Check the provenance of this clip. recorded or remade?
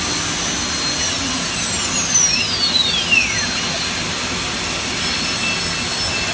recorded